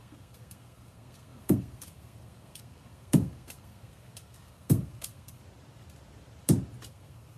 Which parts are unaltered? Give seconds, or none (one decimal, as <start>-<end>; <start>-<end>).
5.4-6.9